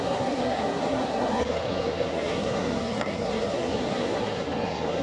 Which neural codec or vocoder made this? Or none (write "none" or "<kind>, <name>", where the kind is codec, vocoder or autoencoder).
codec, SNAC